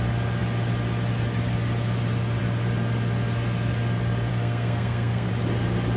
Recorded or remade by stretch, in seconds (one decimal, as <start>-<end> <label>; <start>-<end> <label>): 0.0-4.3 recorded; 4.3-5.3 remade; 5.3-6.0 recorded